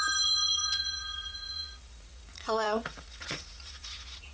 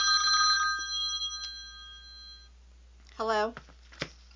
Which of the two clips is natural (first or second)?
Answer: second